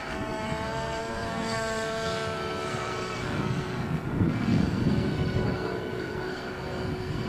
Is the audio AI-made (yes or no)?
yes